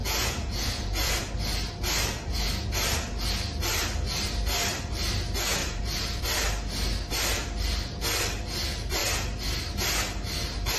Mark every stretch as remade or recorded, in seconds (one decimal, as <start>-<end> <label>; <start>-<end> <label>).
0.0-1.2 remade; 1.2-5.6 recorded; 5.6-6.2 remade; 6.2-10.8 recorded